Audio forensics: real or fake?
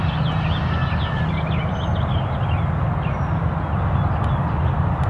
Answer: real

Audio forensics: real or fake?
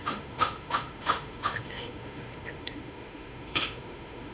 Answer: fake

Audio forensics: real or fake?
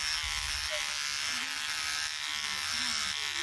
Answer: real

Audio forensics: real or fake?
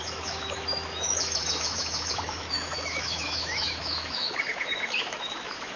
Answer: fake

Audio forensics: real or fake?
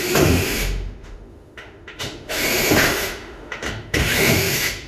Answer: fake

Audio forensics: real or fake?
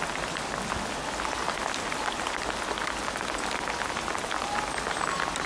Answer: real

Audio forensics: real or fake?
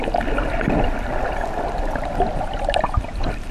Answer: real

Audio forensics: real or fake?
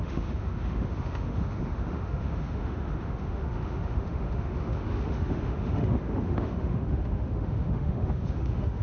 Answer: fake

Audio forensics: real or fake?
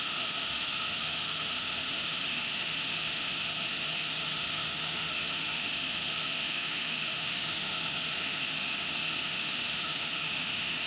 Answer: fake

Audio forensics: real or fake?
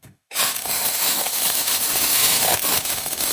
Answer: fake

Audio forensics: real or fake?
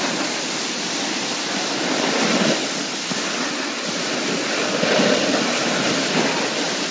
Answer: real